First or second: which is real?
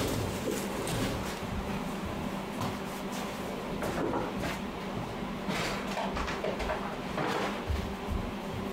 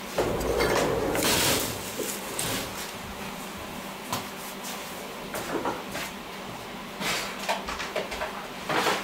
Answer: second